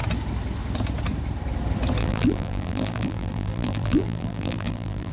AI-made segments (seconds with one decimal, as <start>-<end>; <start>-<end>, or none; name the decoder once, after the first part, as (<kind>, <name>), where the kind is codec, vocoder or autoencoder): 2.0-5.1 (vocoder, BigVGAN v2)

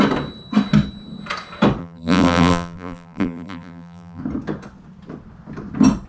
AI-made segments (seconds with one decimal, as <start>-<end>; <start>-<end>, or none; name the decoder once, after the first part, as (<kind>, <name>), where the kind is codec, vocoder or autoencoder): 1.8-4.2 (vocoder, BigVGAN v2)